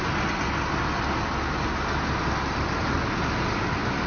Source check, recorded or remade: recorded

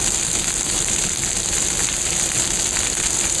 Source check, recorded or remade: recorded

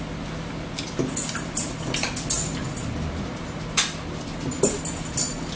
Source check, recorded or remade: recorded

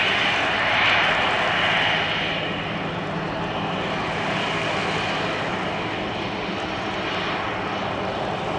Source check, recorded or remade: recorded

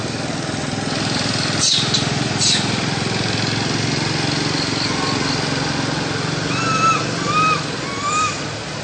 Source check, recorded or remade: recorded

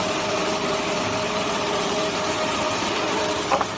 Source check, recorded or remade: remade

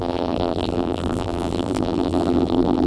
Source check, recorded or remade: remade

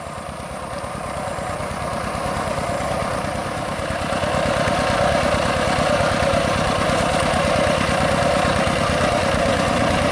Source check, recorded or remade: recorded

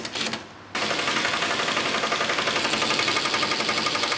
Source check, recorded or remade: recorded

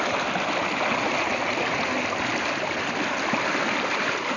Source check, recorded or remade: recorded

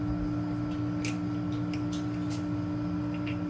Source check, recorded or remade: recorded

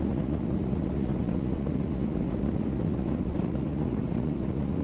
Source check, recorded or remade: remade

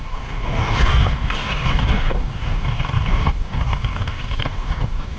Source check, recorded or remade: remade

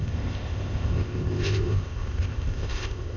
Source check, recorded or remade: remade